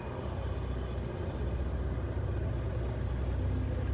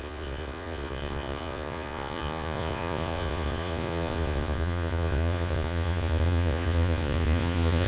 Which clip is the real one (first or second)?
first